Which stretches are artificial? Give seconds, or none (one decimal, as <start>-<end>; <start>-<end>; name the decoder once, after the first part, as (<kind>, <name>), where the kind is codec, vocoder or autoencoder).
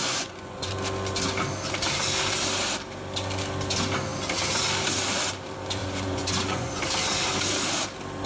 0.0-0.7 (vocoder, Vocos); 5.8-6.8